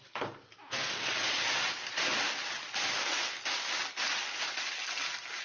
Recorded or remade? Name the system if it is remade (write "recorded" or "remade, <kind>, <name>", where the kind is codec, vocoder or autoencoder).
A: recorded